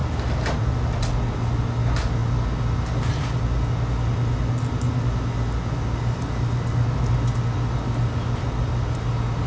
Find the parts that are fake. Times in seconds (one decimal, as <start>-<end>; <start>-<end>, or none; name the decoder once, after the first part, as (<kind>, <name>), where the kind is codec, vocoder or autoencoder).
none